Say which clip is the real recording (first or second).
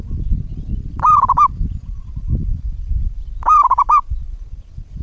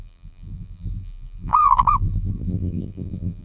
first